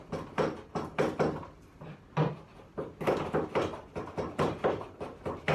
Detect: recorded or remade recorded